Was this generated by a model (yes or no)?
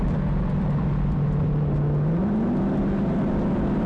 no